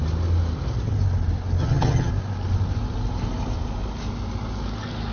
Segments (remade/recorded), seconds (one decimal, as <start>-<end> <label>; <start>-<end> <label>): 0.0-1.6 recorded; 1.6-2.1 remade; 2.1-5.1 recorded